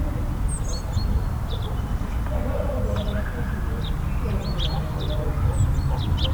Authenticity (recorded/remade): recorded